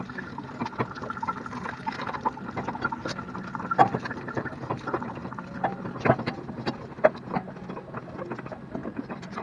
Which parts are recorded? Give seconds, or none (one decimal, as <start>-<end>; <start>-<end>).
0.0-3.8; 4.8-8.8

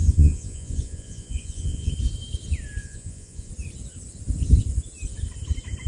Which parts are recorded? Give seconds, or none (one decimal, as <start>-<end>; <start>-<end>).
1.9-2.8; 3.5-5.9

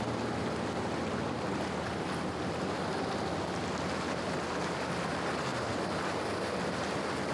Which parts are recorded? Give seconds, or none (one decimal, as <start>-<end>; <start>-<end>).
0.0-7.3

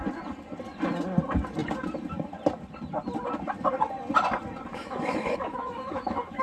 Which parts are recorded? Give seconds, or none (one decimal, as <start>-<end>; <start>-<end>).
0.0-4.7

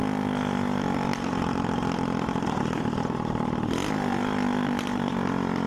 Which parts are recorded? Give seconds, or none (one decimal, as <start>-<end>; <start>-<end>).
0.0-5.7

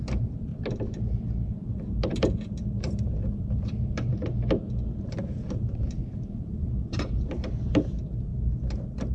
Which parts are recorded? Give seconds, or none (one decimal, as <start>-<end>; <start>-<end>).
0.5-1.9; 4.1-5.1; 8.3-9.1

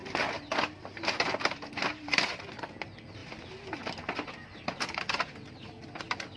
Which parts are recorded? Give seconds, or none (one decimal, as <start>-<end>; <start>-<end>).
0.0-6.4

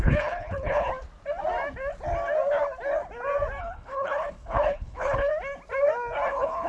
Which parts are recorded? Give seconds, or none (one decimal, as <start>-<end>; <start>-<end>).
0.9-3.6; 5.3-6.3